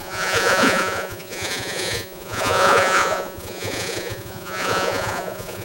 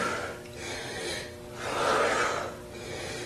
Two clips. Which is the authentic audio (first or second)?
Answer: second